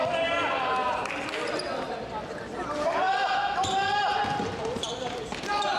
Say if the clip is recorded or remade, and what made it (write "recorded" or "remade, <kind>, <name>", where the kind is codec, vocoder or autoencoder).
recorded